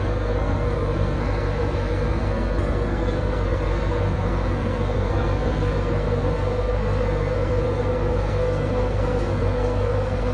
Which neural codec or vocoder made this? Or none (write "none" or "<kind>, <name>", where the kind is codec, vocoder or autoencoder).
codec, SNAC